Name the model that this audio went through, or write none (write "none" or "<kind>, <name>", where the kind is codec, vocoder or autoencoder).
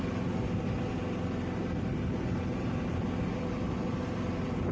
none